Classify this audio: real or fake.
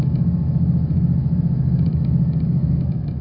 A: fake